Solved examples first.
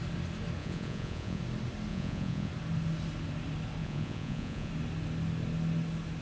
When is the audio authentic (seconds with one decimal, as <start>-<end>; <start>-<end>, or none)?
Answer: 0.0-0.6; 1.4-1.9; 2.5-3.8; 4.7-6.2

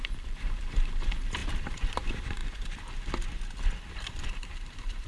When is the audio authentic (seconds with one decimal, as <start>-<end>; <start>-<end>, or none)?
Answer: 2.4-3.9

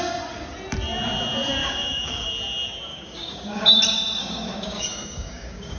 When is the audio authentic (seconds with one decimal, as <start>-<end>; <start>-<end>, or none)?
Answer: 0.0-1.6; 2.3-2.9; 3.8-4.2

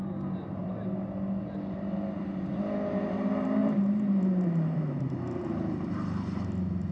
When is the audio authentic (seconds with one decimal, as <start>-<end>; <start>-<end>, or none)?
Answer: 0.0-3.6; 4.8-6.9